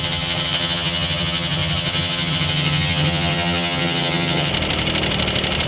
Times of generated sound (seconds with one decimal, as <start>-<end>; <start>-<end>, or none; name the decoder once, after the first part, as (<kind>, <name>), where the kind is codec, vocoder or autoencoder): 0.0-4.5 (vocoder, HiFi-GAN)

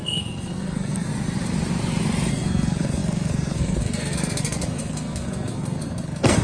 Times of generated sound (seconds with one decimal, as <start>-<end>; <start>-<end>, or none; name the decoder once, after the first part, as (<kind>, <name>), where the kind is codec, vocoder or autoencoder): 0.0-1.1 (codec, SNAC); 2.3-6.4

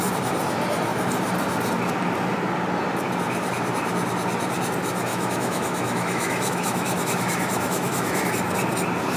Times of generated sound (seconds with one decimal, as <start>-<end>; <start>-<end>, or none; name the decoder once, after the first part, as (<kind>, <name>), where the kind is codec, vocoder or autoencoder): 5.1-8.3 (autoencoder, DAC-VAE)